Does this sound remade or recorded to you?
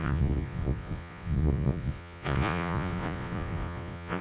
remade